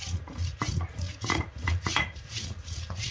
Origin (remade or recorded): remade